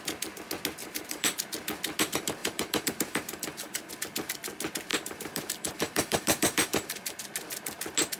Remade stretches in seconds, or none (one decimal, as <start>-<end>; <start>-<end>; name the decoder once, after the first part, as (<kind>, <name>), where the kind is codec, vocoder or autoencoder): 0.8-1.4 (vocoder, BigVGAN v2); 2.4-3.9; 4.9-7.2